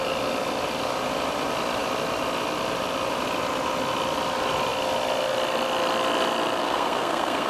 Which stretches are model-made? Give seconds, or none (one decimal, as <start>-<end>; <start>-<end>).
6.6-7.5